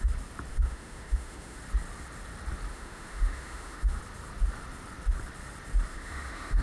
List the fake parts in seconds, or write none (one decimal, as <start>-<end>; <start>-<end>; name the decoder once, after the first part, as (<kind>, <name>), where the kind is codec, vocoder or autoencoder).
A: 0.5-1.6 (autoencoder, DAC-VAE); 2.7-4.0; 5.9-6.6